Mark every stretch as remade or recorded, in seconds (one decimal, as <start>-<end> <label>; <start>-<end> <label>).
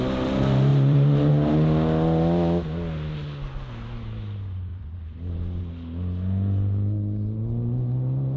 0.0-0.7 recorded; 0.7-1.3 remade; 1.3-4.7 recorded; 4.7-5.6 remade; 5.6-8.4 recorded